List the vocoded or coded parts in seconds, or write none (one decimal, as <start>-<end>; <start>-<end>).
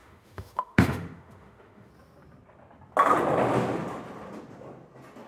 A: 0.0-1.9